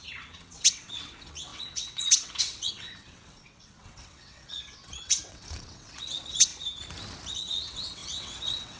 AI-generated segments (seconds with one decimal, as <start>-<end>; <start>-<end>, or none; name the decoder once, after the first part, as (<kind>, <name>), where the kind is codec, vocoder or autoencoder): 0.0-6.5 (vocoder, WaveNeXt); 7.3-8.8